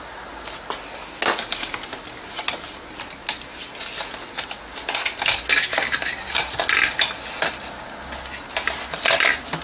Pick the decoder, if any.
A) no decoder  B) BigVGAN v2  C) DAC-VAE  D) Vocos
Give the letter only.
A